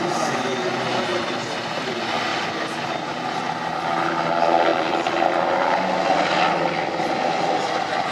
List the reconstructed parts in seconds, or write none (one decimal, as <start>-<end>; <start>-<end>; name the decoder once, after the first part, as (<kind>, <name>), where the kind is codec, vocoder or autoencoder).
none